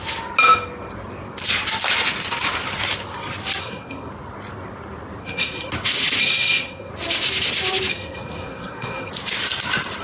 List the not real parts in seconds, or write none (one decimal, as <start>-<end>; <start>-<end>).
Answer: 3.6-4.1; 5.2-5.7; 6.2-6.9; 7.9-9.1